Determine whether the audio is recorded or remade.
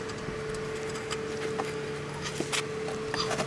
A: recorded